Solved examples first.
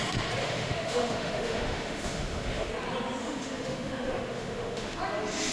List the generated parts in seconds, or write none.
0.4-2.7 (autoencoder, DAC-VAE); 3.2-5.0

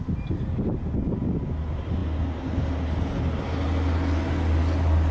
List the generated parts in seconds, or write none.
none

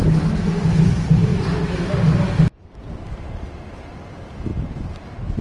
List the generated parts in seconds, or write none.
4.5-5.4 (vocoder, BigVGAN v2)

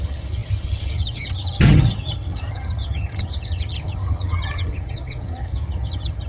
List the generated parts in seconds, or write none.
0.0-6.3 (vocoder, HiFi-GAN)

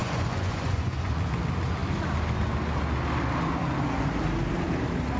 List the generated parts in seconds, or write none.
0.0-1.3 (vocoder, Vocos)

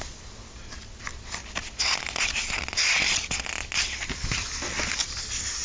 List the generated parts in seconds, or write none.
none